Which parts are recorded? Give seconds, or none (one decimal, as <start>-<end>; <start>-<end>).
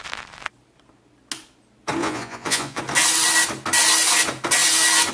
0.0-2.0; 2.8-5.1